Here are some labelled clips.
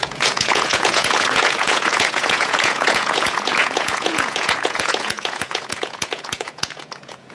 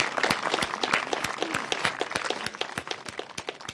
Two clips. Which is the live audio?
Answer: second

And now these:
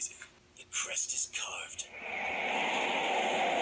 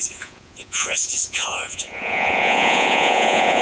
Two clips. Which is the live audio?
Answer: first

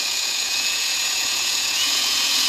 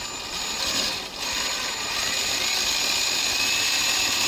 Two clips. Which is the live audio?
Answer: second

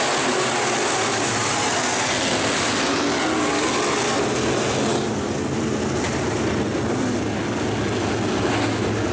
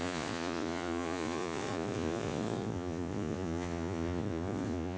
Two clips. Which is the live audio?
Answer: first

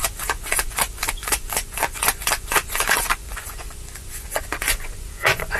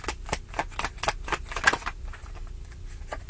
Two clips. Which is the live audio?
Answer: second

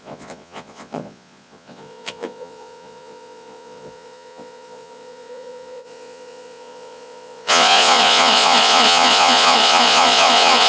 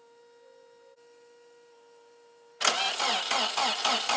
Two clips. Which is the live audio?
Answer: second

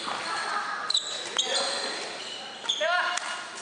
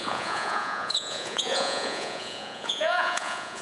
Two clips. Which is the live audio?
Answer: first